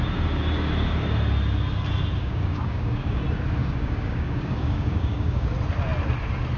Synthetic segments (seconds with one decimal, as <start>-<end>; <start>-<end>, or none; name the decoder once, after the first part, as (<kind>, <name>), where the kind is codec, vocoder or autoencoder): 2.2-3.2 (codec, DAC); 3.6-5.5